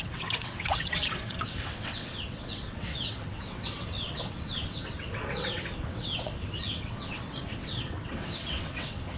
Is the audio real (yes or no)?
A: no